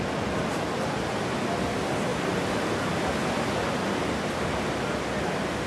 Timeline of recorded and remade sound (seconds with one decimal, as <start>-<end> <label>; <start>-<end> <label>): 0.0-5.7 recorded